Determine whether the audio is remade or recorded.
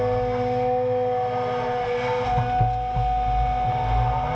recorded